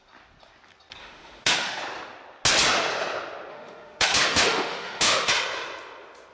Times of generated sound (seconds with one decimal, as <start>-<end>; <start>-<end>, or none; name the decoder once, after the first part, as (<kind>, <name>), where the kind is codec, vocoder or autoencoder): 1.0-1.8 (autoencoder, DAC-VAE); 3.5-5.3